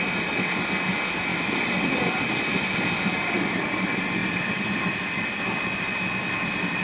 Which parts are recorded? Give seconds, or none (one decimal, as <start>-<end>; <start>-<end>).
0.0-1.3; 2.9-4.2; 5.4-6.8